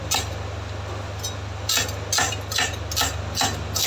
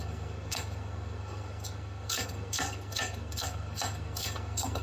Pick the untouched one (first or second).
first